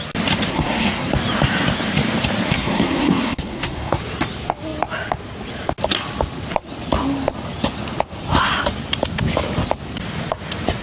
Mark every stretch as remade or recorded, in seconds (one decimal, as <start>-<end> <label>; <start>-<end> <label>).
0.0-0.5 recorded; 0.5-1.1 remade; 1.1-2.5 recorded; 2.5-4.0 remade; 4.0-10.8 recorded